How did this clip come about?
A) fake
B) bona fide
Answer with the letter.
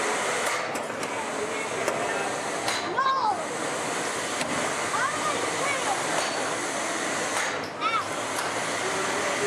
B